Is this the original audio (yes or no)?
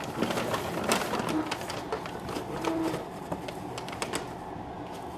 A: yes